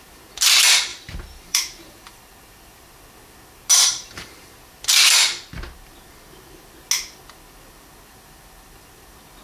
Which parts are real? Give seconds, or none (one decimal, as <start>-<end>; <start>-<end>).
0.0-0.9; 2.2-3.7; 4.5-9.4